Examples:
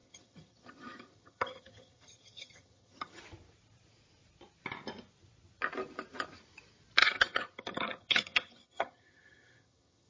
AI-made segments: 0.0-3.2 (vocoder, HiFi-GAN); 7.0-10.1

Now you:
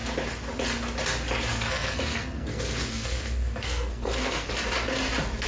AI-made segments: 1.5-4.5 (codec, SNAC)

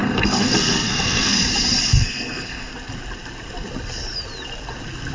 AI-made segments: 0.0-1.4 (codec, SNAC); 1.9-2.7

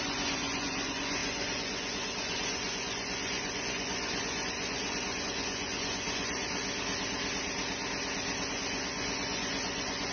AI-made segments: 0.0-6.6 (vocoder, Vocos); 8.5-10.1

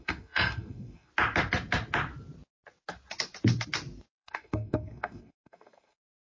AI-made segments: 0.0-1.1 (codec, SNAC); 4.1-6.3

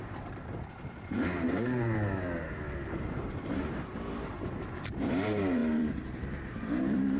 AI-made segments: 0.0-7.2 (vocoder, BigVGAN v2)

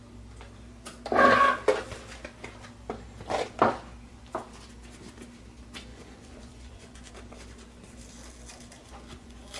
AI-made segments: 5.9-7.1 (vocoder, Vocos); 8.8-9.6

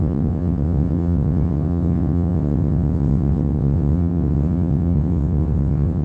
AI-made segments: 0.0-6.0 (vocoder, WaveNeXt)